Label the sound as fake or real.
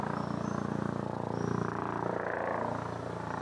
fake